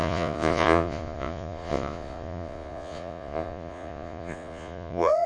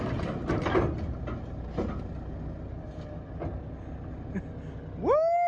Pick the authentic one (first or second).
second